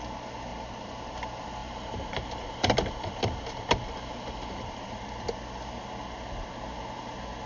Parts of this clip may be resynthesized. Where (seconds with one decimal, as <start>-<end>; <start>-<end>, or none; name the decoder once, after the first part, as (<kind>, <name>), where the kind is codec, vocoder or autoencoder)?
0.5-1.2 (vocoder, BigVGAN v2); 1.6-5.2